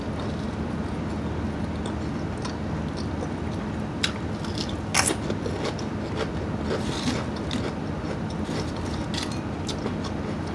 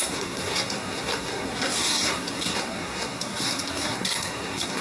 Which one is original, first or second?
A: first